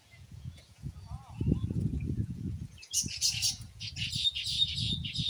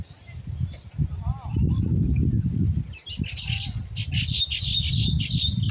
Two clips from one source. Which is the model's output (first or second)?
first